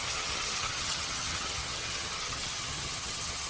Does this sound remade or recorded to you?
remade